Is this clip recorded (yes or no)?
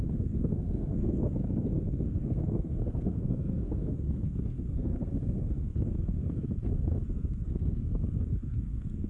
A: no